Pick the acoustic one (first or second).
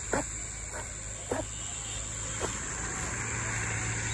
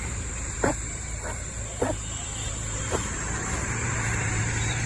first